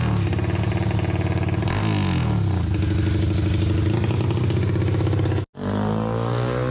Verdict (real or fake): real